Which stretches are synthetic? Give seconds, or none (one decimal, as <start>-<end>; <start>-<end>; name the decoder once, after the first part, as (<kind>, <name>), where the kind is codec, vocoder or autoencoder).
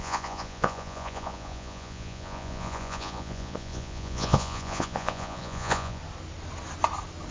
0.0-6.0 (vocoder, Vocos)